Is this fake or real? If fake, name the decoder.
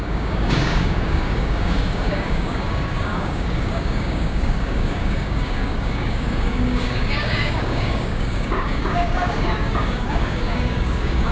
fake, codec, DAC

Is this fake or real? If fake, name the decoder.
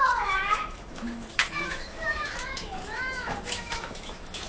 fake, autoencoder, DAC-VAE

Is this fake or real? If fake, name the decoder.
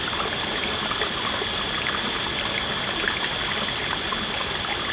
real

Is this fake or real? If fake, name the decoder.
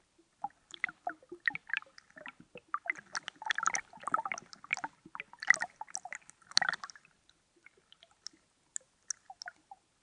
real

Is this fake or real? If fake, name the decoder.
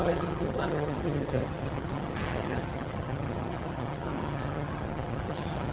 fake, vocoder, HiFi-GAN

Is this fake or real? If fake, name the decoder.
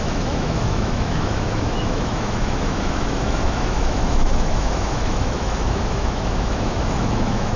fake, autoencoder, DAC-VAE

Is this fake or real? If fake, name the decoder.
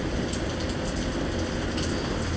real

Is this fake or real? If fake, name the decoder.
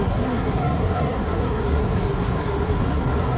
fake, codec, SNAC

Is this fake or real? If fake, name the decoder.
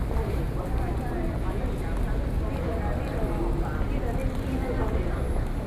real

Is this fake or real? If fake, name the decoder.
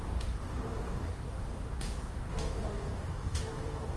fake, codec, DAC